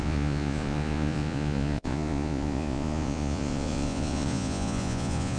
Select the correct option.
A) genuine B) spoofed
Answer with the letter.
B